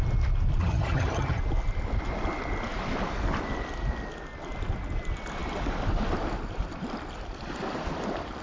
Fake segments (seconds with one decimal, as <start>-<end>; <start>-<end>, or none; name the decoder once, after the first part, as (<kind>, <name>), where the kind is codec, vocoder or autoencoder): 0.6-1.4 (vocoder, HiFi-GAN)